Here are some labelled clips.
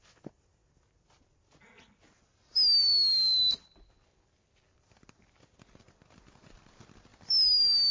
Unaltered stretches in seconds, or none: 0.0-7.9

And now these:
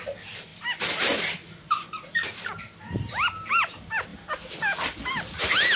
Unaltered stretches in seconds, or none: 0.5-3.1

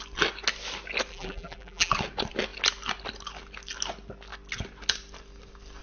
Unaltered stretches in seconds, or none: 0.0-1.1; 1.9-5.8

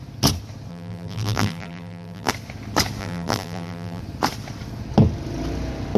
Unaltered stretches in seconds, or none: 0.0-0.7; 2.3-3.0; 4.0-6.0

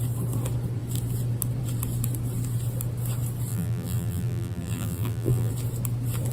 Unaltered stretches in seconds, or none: 0.0-3.5; 5.5-6.3

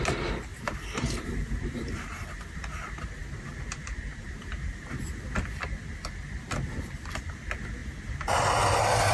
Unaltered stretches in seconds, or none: 0.0-0.5; 2.7-3.2; 4.9-9.1